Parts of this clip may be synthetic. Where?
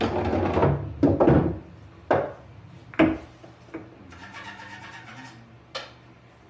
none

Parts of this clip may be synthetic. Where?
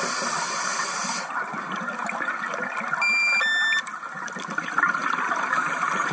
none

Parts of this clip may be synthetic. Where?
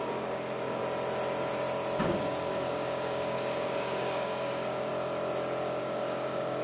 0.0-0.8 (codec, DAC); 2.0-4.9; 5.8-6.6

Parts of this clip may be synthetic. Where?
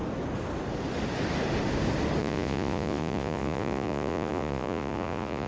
2.2-5.5 (vocoder, Vocos)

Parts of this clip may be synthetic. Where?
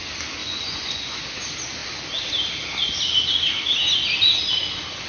0.4-1.2 (vocoder, Vocos)